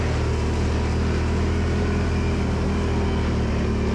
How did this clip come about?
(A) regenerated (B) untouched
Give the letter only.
B